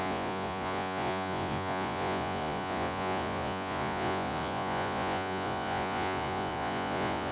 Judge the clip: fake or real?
fake